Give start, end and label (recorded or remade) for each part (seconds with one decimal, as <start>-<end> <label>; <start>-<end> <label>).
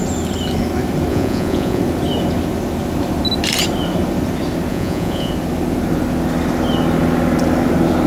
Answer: 0.0-1.1 recorded; 1.1-1.8 remade; 1.8-4.7 recorded; 4.7-5.3 remade; 5.3-8.1 recorded